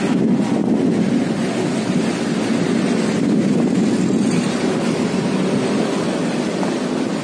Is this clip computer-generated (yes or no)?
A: no